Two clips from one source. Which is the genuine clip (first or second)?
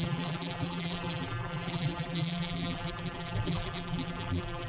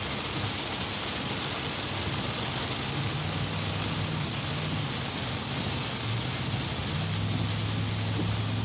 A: second